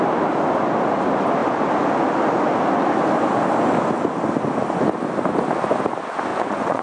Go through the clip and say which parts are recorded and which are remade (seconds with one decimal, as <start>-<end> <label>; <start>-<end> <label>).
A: 0.0-6.3 recorded; 6.3-6.8 remade